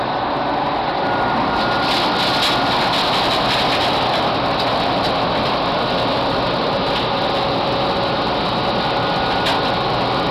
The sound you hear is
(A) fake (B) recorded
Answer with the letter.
B